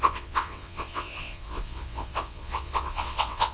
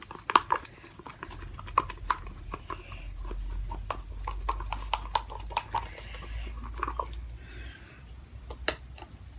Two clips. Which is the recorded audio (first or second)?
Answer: second